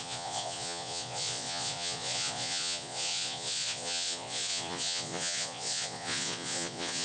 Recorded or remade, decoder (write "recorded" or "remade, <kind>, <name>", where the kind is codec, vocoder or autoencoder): remade, vocoder, Vocos